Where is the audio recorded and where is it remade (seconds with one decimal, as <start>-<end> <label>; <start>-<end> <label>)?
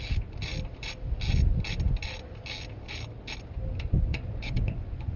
0.0-4.1 recorded; 4.1-5.2 remade